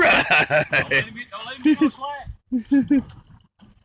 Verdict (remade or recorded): recorded